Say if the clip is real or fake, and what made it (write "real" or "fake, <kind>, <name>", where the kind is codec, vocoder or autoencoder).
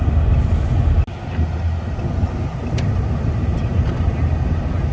real